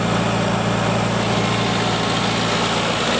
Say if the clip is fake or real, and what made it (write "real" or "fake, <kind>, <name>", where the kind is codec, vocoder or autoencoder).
real